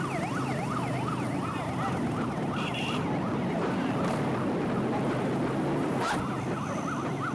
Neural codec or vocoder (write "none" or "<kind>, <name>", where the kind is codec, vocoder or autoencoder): none